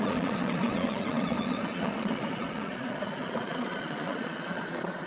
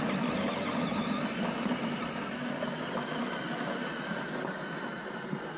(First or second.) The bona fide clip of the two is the second